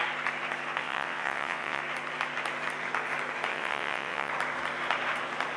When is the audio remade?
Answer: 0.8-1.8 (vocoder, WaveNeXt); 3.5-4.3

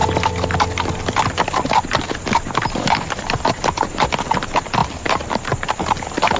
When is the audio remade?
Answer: none

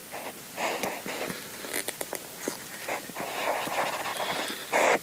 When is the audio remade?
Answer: none

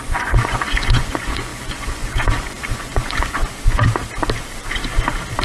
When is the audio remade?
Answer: 0.0-3.4 (vocoder, Vocos)

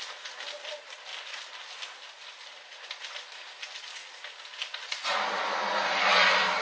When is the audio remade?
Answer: none

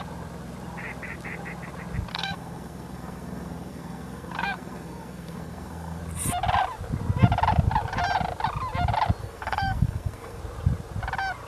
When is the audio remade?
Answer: 2.1-6.0 (codec, SNAC); 9.2-10.4